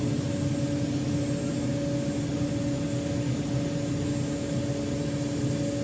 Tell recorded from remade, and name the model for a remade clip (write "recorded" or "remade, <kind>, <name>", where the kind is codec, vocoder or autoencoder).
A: recorded